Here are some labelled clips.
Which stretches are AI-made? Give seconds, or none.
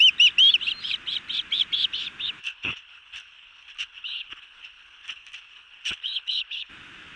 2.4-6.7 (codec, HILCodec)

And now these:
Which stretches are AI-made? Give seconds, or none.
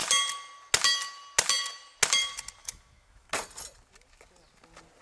2.6-3.3 (autoencoder, DAC-VAE)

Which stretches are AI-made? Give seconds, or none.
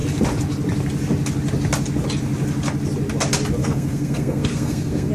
3.6-5.1 (codec, SNAC)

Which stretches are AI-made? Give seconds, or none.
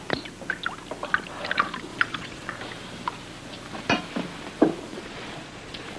1.9-2.5 (vocoder, Vocos); 4.9-6.0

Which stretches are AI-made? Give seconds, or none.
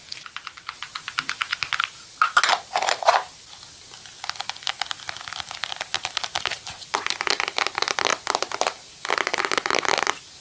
none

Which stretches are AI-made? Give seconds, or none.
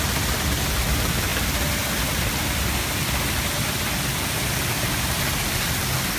1.3-5.0 (vocoder, BigVGAN v2)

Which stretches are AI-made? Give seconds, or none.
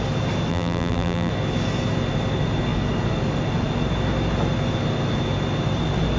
0.5-1.3 (vocoder, BigVGAN v2)